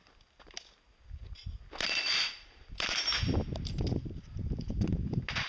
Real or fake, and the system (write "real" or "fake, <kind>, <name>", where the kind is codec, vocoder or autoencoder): real